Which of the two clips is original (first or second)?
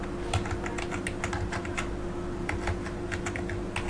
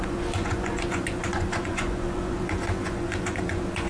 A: first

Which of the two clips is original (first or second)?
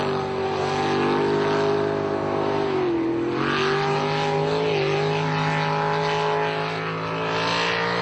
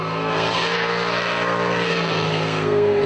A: first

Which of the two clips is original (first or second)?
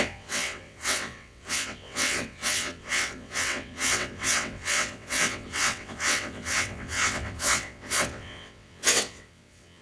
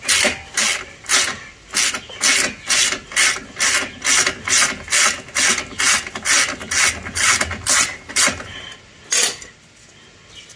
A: second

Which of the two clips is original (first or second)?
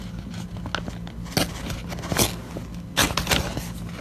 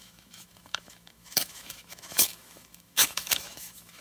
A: first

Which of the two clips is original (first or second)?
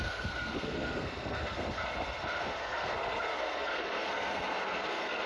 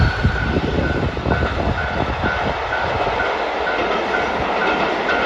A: second